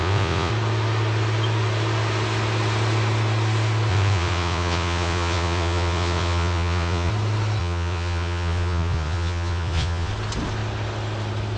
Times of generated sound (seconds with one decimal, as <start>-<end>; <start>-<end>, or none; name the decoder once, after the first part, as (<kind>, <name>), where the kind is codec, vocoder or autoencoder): 0.0-0.5 (vocoder, Vocos); 3.9-7.1; 7.6-10.1